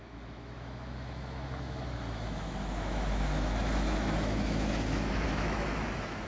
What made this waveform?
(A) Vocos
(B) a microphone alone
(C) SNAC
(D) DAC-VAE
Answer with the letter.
D